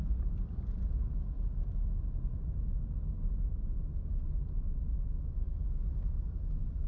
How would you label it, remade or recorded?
recorded